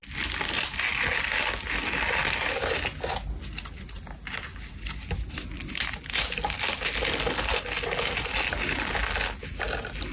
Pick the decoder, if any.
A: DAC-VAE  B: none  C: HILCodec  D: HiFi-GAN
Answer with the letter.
B